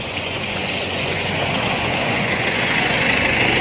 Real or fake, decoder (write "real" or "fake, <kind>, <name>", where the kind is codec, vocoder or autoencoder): fake, vocoder, Vocos